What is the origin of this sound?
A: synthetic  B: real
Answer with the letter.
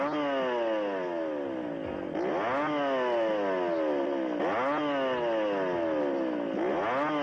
B